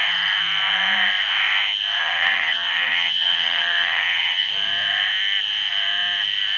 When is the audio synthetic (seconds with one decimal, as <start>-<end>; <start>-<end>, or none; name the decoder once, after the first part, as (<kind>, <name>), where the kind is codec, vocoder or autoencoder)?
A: 2.0-4.5 (vocoder, HiFi-GAN)